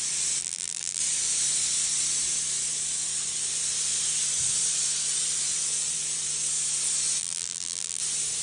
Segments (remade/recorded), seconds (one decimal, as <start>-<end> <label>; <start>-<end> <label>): 0.0-0.4 recorded; 0.4-1.0 remade; 1.0-7.2 recorded; 7.2-8.0 remade; 8.0-8.4 recorded